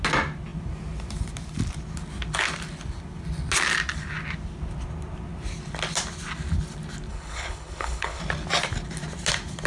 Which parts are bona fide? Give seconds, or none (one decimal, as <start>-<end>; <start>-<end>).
0.0-7.1; 8.2-9.7